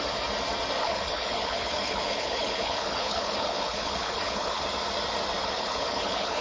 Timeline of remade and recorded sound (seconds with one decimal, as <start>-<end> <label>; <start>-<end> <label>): 0.0-0.8 recorded; 0.8-4.6 remade; 4.6-5.4 recorded; 5.4-6.4 remade